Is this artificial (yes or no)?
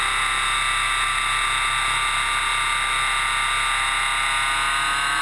no